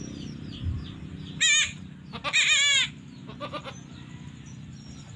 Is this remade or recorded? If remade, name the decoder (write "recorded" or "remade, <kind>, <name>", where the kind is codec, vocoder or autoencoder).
recorded